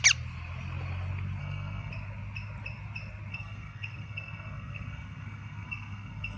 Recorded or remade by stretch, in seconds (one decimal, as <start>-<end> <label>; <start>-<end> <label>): 0.0-1.4 recorded; 1.4-1.9 remade; 1.9-3.3 recorded; 3.3-6.4 remade